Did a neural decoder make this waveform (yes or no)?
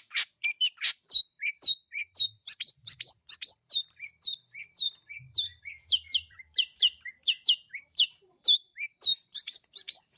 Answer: yes